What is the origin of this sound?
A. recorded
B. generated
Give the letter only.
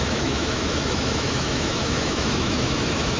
B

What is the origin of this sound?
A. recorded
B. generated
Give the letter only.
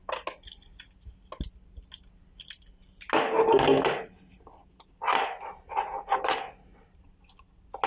A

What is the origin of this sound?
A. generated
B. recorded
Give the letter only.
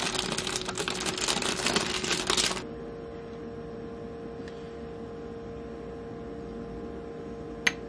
B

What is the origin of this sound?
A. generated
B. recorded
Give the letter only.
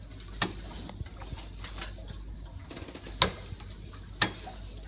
B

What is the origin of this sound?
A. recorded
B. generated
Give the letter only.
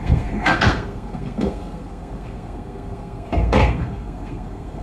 B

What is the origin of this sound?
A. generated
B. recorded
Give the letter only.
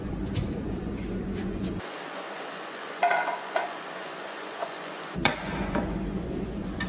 A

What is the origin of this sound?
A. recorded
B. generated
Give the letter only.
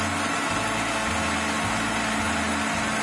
A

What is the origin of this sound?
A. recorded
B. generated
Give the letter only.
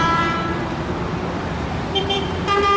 B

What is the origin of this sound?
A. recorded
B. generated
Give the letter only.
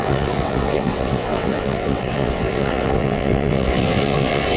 B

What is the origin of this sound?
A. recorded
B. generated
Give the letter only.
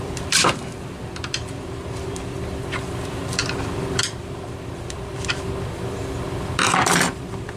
B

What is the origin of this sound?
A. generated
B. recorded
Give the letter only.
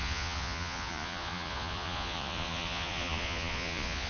A